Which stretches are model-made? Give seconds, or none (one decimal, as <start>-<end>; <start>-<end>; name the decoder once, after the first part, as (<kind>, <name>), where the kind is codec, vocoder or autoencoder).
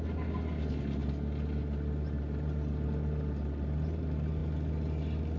none